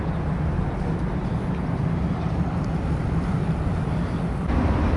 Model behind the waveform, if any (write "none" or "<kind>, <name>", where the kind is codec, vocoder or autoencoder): none